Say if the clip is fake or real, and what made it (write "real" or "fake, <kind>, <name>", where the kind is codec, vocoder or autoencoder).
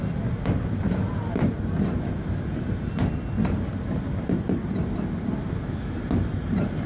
real